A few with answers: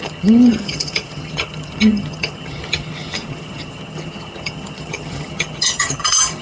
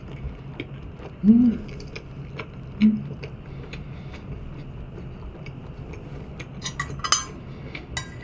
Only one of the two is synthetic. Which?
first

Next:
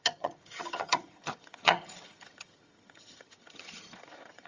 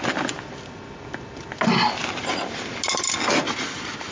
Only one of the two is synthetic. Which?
first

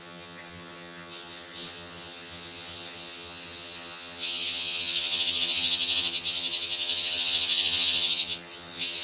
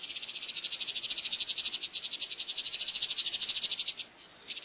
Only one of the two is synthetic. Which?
first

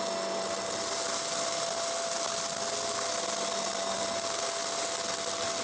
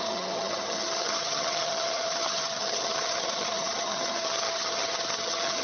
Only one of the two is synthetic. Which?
second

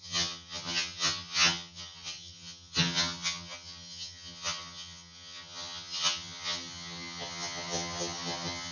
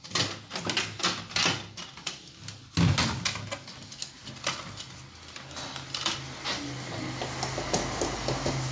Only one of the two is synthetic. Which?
first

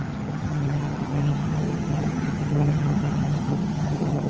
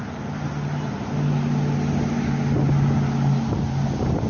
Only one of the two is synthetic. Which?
first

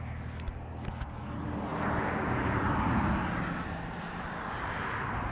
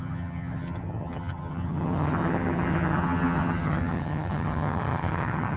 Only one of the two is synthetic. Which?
second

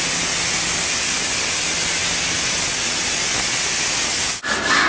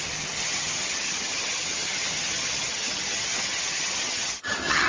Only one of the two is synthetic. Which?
second